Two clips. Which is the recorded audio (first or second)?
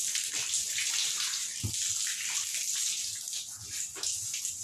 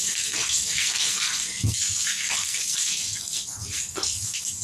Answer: first